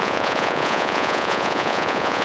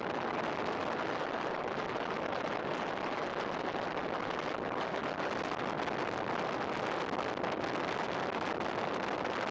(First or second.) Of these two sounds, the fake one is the first